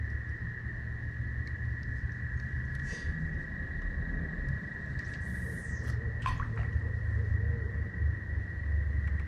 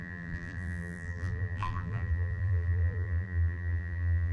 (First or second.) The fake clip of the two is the second